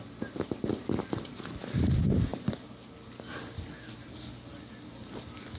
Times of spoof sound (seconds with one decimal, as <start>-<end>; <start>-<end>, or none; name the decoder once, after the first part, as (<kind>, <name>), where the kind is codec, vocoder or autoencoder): none